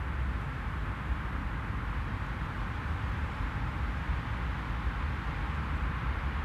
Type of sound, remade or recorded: recorded